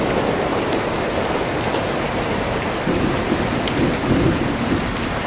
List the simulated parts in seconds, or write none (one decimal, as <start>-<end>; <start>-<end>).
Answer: 0.5-3.7